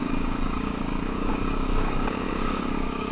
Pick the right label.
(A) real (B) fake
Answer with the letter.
B